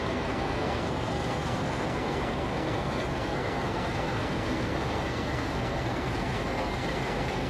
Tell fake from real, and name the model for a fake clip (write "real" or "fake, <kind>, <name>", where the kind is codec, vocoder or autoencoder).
fake, codec, SNAC